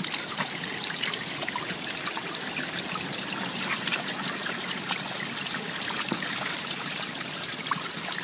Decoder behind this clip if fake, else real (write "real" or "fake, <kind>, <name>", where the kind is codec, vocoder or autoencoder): real